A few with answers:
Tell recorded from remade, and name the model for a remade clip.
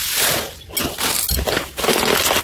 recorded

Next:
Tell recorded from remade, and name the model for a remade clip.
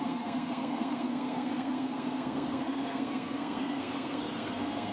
remade, codec, SNAC